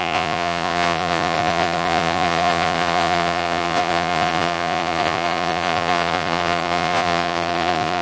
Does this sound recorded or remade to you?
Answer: remade